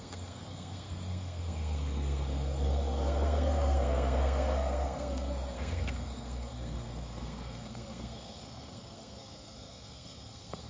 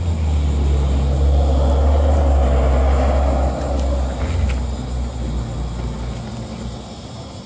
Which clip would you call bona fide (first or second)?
second